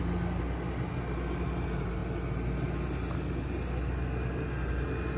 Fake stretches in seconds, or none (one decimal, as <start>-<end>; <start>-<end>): none